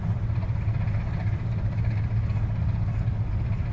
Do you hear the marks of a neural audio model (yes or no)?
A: no